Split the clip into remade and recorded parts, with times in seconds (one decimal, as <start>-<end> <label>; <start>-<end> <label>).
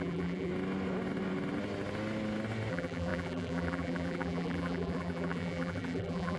0.0-0.5 remade; 0.5-2.7 recorded; 2.7-6.4 remade